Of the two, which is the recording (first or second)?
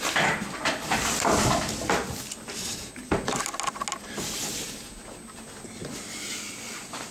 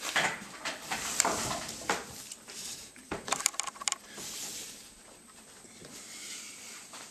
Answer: first